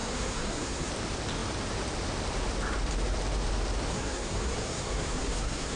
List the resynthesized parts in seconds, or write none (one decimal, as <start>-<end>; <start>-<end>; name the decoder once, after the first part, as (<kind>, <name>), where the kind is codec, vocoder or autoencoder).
0.0-0.9 (codec, SNAC); 3.9-5.8